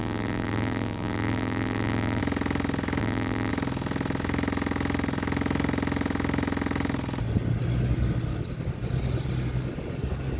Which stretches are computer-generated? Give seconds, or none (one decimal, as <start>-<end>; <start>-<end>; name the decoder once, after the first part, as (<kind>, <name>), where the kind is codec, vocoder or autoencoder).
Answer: 0.0-2.2 (vocoder, BigVGAN v2); 3.0-3.5